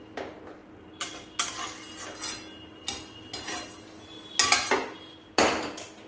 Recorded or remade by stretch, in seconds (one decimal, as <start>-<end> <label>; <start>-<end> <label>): 0.0-6.1 recorded